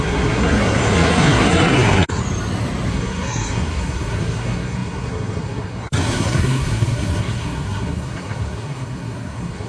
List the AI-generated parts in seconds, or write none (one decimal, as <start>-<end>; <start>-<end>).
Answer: 0.0-2.2; 2.9-9.7